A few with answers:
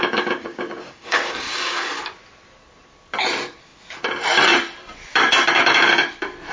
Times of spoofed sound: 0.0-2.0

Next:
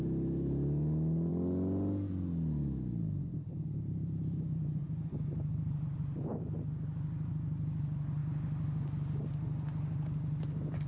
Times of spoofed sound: none

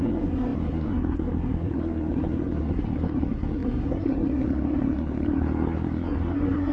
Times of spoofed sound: 0.0-6.7